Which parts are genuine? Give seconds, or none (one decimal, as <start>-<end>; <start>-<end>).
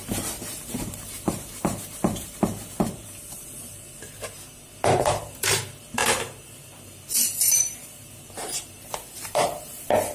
none